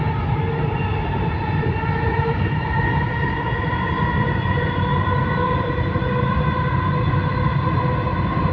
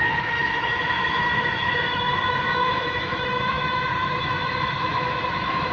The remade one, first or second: second